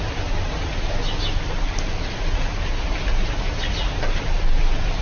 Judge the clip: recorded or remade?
recorded